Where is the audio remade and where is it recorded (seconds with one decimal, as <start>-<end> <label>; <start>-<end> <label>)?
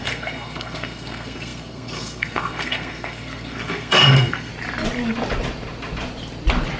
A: 0.0-4.5 remade; 4.5-6.8 recorded